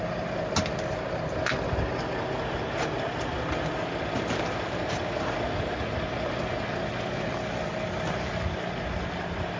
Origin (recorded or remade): recorded